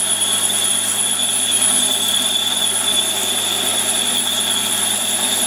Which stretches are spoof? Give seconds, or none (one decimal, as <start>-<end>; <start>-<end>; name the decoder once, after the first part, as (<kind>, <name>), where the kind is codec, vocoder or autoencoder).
none